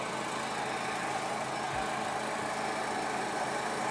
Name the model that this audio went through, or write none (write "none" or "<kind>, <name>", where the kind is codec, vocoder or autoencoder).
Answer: none